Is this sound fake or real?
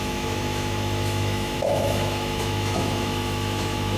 fake